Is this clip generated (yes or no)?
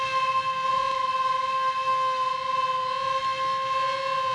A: no